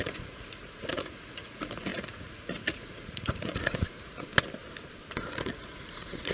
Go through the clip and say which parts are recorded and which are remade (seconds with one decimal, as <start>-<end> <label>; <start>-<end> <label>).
0.0-4.3 remade; 4.3-5.3 recorded; 5.3-6.3 remade